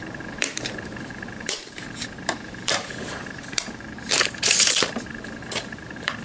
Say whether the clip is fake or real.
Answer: fake